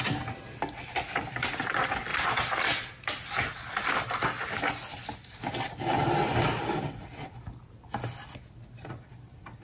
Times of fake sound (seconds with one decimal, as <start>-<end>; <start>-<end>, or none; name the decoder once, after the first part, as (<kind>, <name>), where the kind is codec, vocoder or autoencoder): none